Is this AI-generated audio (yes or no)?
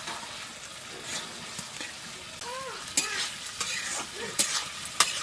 no